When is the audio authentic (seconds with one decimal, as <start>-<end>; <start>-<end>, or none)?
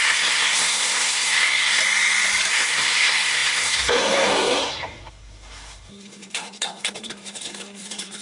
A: 1.8-2.5